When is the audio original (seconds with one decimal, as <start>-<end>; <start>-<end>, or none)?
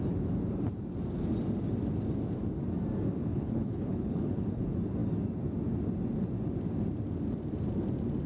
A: 0.0-3.3; 4.6-8.3